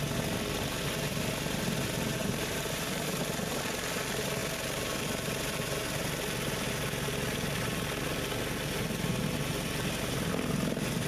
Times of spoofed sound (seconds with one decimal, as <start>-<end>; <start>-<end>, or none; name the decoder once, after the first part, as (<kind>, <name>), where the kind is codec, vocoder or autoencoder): 2.2-3.2 (vocoder, BigVGAN v2)